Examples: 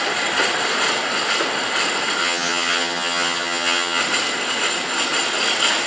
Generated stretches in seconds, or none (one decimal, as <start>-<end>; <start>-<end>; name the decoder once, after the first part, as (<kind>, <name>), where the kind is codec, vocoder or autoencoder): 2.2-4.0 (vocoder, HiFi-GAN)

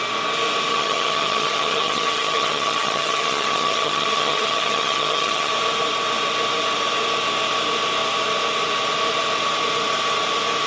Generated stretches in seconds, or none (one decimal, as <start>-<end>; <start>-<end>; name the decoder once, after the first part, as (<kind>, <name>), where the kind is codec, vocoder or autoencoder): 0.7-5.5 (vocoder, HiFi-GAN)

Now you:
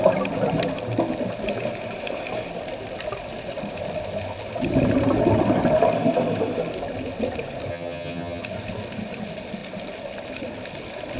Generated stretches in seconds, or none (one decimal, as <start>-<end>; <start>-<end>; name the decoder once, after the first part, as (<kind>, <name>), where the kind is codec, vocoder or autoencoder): 7.7-8.4 (vocoder, HiFi-GAN)